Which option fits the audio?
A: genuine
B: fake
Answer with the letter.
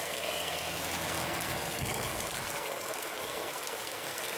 B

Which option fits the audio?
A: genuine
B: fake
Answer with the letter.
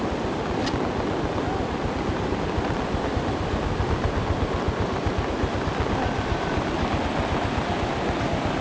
A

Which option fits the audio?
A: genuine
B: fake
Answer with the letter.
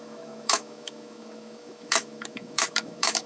B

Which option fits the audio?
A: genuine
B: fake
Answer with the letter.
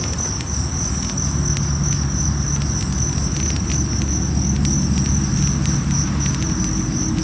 A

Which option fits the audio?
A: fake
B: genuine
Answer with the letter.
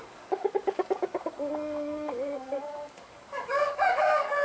A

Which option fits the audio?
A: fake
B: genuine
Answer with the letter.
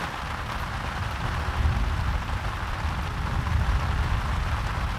B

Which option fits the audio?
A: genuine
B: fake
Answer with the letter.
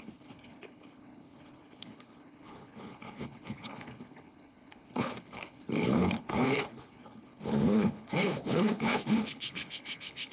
B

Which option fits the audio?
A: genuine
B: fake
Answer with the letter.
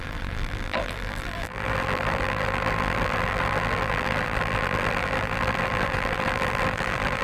B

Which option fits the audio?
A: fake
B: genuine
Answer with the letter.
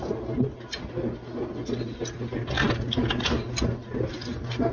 B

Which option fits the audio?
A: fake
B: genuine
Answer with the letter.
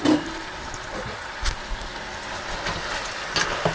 B